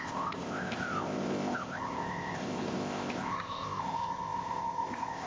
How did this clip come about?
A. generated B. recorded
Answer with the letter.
A